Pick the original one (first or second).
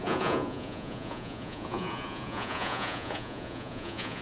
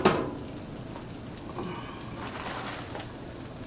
second